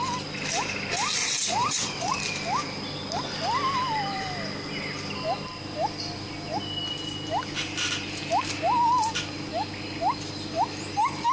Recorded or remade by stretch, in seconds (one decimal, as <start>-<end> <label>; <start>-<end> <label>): 0.0-1.2 recorded; 1.2-2.2 remade; 2.2-11.3 recorded